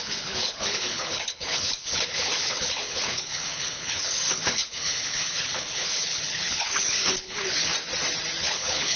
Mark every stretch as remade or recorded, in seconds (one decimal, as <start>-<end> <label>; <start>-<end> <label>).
0.0-7.7 remade; 7.7-8.4 recorded; 8.4-9.0 remade